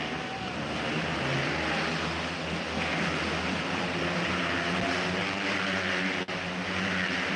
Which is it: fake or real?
real